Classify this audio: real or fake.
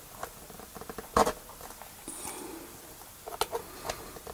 real